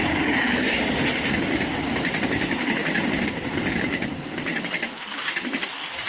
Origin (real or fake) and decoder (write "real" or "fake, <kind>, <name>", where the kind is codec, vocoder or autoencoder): real